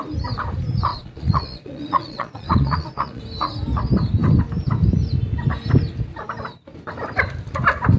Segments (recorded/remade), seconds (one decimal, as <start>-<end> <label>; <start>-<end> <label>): 0.0-0.9 recorded; 0.9-3.2 remade; 3.2-8.0 recorded